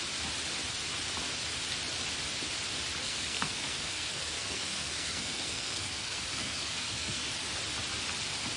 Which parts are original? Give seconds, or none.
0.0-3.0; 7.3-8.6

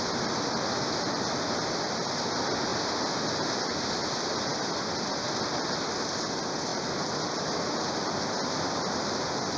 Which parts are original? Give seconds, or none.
0.0-9.6